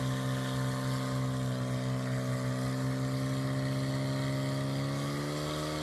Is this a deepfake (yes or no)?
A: no